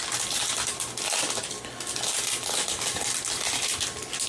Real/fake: real